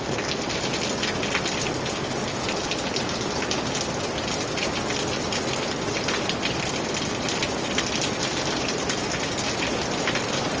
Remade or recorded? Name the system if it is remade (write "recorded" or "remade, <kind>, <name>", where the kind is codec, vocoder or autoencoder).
recorded